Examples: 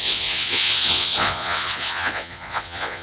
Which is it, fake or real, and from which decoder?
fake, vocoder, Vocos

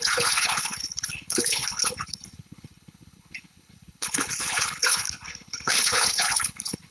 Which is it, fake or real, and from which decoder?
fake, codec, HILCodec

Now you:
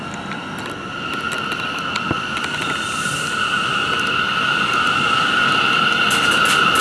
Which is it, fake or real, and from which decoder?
real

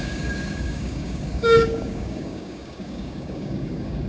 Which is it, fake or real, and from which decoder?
fake, codec, DAC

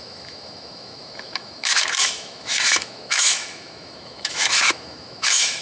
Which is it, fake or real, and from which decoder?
fake, autoencoder, DAC-VAE